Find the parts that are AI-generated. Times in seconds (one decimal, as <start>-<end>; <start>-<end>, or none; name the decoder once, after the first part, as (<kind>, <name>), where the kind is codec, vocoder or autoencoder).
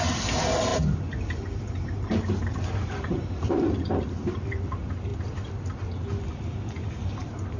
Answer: 0.0-0.7 (vocoder, BigVGAN v2); 1.7-5.1; 6.3-7.6